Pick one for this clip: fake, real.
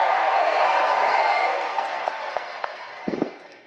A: fake